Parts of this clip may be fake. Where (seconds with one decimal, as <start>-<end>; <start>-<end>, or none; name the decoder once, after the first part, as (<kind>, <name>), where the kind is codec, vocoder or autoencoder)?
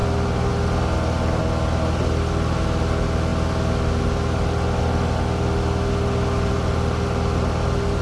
none